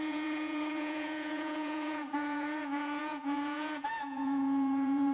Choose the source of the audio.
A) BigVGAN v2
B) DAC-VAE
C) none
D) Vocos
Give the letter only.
D